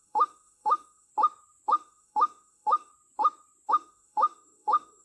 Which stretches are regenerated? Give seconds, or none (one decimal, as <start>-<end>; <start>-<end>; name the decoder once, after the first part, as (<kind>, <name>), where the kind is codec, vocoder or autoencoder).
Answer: 0.0-1.1 (autoencoder, DAC-VAE); 1.7-2.9; 3.7-5.0